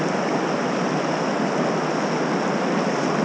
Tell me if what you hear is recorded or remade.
recorded